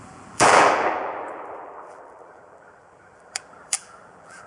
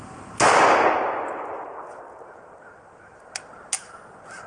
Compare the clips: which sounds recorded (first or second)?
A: second